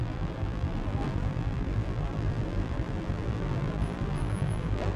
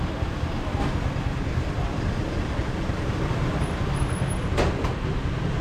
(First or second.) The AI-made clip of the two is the first